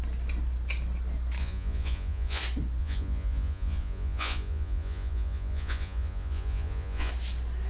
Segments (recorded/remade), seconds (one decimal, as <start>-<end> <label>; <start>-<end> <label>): 0.0-1.4 recorded; 1.4-2.4 remade; 2.4-2.8 recorded; 2.8-7.1 remade; 7.1-7.7 recorded